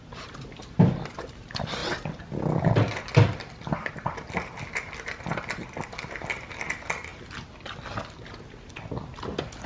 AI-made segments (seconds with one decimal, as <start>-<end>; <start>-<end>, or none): none